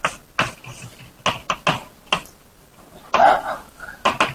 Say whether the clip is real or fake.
real